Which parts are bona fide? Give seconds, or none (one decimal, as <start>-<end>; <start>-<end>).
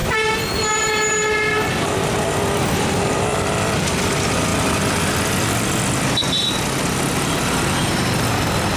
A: 0.0-8.8